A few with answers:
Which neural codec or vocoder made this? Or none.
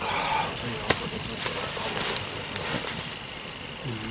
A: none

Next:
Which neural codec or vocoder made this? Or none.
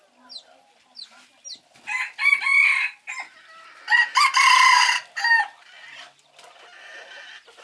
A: none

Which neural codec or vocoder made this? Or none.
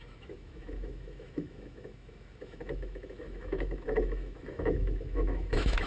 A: autoencoder, DAC-VAE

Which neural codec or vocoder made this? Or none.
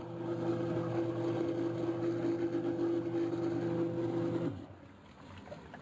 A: none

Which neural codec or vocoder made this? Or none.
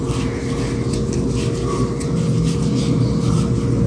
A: none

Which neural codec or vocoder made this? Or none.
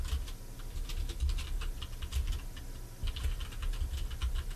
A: none